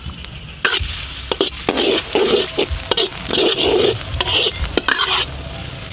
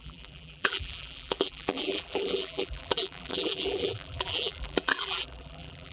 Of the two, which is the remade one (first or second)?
second